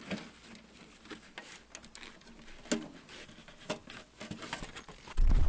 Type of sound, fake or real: real